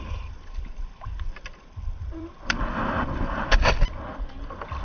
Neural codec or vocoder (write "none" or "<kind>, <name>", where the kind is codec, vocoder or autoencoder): vocoder, BigVGAN v2